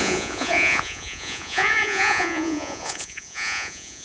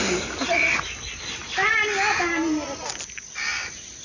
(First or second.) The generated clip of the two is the first